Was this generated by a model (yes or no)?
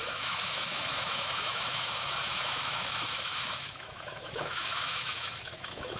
yes